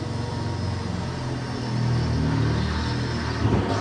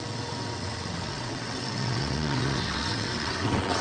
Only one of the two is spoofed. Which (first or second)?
second